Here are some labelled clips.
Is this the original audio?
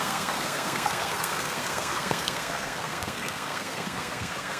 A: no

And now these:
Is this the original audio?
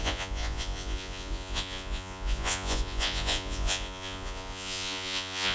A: no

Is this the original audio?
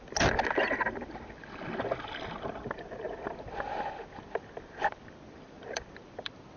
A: no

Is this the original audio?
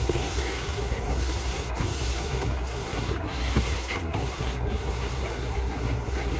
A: no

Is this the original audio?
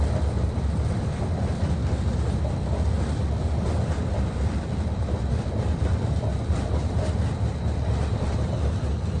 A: no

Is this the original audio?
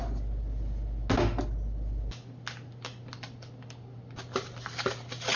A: yes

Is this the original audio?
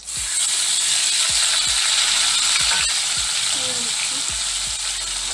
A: yes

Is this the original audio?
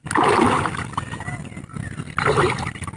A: yes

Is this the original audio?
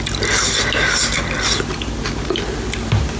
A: yes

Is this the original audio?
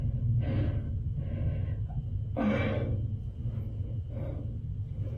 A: yes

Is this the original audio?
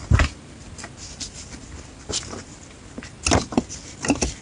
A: yes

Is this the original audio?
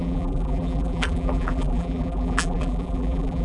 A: no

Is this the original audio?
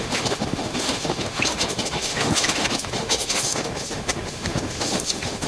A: no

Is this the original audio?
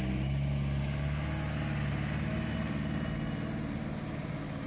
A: yes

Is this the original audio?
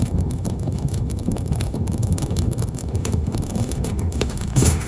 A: no